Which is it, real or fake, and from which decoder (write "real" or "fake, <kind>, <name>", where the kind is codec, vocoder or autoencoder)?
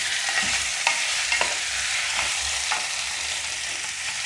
fake, vocoder, BigVGAN v2